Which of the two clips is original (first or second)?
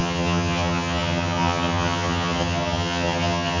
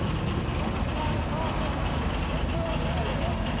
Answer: second